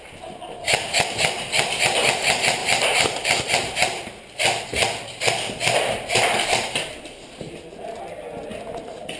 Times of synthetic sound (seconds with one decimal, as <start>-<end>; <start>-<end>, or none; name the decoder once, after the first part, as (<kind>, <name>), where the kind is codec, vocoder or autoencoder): none